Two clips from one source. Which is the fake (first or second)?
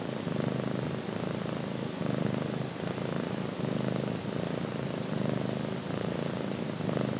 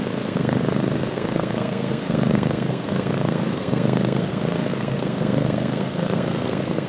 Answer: second